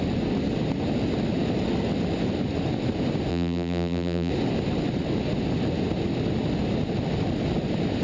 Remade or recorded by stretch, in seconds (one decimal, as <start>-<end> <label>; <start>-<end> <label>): 0.0-3.3 recorded; 3.3-4.3 remade; 4.3-8.0 recorded